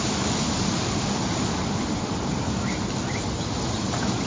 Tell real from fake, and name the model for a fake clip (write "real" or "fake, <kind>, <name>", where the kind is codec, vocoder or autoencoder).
real